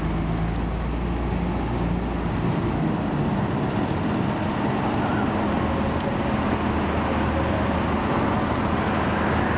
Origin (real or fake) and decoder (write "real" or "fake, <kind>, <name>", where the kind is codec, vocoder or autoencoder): real